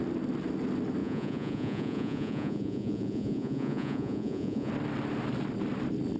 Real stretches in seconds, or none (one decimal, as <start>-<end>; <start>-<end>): 0.0-1.0; 4.7-6.2